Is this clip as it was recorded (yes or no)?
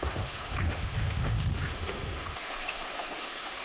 no